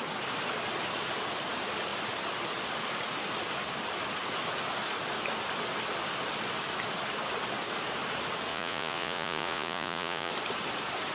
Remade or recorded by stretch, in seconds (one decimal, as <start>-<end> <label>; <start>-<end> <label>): 0.0-8.5 recorded; 8.5-10.3 remade; 10.3-11.1 recorded